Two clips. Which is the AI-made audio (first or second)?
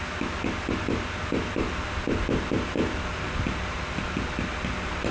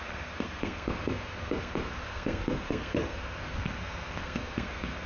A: second